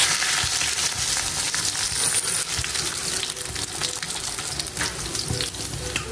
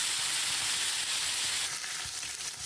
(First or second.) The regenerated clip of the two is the second